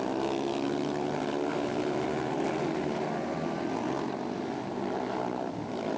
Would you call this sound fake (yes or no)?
no